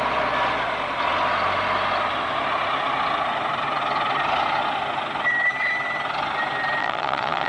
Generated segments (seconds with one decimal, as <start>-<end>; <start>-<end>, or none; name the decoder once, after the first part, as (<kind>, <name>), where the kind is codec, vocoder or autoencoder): 6.8-7.5 (vocoder, Vocos)